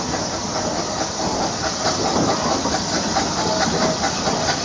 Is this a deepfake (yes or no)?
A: no